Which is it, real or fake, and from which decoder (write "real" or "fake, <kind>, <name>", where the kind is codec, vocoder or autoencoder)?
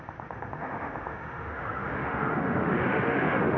fake, autoencoder, DAC-VAE